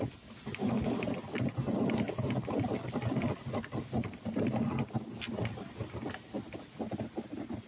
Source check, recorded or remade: recorded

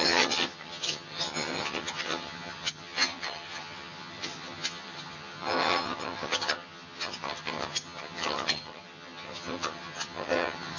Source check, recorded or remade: remade